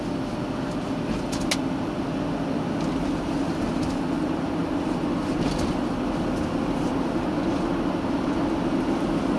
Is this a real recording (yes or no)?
yes